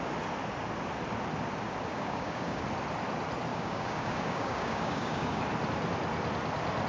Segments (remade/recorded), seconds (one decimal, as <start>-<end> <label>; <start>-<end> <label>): 0.0-1.9 recorded; 1.9-2.6 remade; 2.6-3.5 recorded; 3.5-5.4 remade; 5.4-6.9 recorded